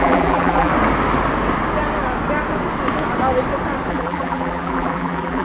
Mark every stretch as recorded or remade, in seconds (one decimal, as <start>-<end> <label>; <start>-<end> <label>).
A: 0.0-0.7 remade; 0.7-3.9 recorded; 3.9-5.4 remade

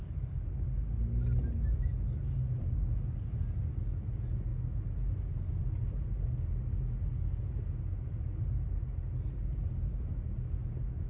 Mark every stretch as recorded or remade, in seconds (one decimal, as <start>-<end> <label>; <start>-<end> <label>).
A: 0.0-11.1 recorded

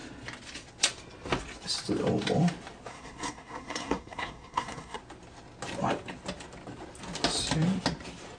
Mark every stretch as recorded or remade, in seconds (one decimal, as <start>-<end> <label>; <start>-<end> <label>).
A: 0.0-2.9 recorded; 2.9-5.0 remade; 5.0-8.4 recorded

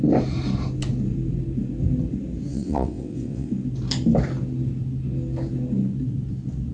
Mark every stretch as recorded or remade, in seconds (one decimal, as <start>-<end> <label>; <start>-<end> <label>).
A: 0.0-2.5 recorded; 2.5-3.5 remade; 3.5-6.7 recorded

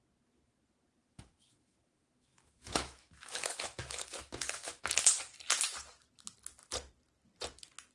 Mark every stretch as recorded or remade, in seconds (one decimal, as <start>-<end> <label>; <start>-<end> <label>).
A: 0.0-1.0 recorded; 1.0-4.8 remade; 4.8-7.9 recorded

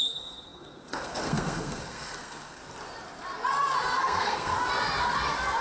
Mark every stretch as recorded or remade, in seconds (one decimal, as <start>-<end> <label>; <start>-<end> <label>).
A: 0.0-2.6 remade; 2.6-4.0 recorded; 4.0-4.5 remade; 4.5-5.6 recorded

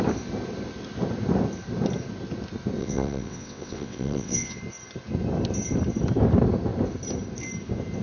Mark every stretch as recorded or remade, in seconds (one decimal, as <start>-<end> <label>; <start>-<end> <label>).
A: 0.0-2.8 recorded; 2.8-4.6 remade; 4.6-8.0 recorded